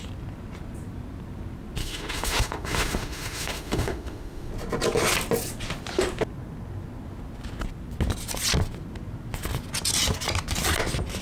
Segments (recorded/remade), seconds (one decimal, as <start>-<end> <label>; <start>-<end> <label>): 0.0-1.8 recorded; 1.8-4.5 remade; 4.5-11.2 recorded